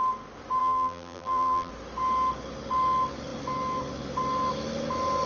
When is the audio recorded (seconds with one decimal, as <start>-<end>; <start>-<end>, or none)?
0.0-0.6; 1.7-5.3